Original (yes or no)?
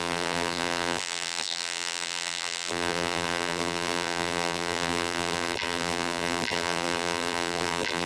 no